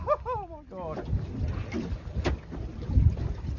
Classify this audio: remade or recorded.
recorded